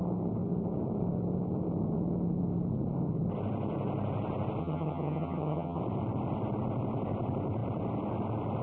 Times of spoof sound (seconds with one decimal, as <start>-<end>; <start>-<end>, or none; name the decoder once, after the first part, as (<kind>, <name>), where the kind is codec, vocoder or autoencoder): 4.6-5.8 (vocoder, HiFi-GAN)